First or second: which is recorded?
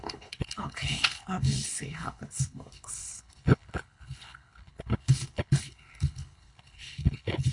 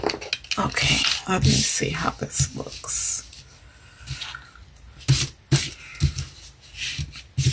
second